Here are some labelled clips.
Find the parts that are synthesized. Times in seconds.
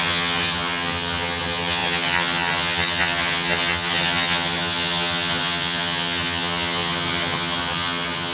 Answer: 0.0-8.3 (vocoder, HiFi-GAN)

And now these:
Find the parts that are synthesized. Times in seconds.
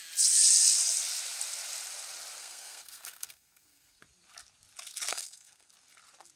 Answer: 2.4-4.0 (codec, SNAC); 5.1-5.7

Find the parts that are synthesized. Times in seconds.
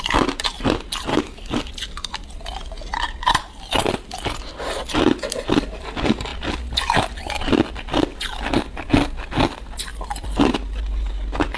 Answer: 1.1-1.7 (codec, DAC)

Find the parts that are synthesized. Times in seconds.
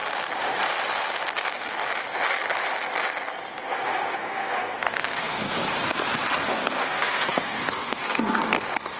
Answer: 3.6-5.6 (codec, SNAC); 6.4-9.0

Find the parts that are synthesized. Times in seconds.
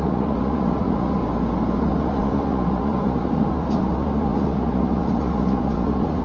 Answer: 0.0-1.2 (vocoder, Vocos); 1.8-6.2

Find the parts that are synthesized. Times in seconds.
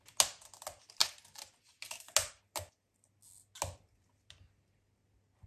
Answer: none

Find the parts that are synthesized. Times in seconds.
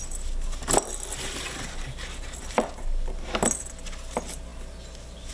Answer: none